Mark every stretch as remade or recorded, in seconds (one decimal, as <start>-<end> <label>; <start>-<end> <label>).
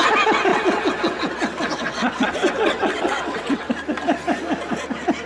0.0-0.5 recorded; 0.5-3.7 remade; 3.7-5.3 recorded